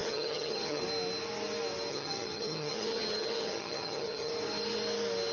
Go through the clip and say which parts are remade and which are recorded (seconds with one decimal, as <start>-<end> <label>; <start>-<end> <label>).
0.0-0.8 remade; 0.8-1.9 recorded; 1.9-4.3 remade; 4.3-5.3 recorded